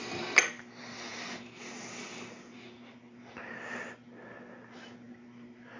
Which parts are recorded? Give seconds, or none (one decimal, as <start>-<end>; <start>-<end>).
0.0-5.8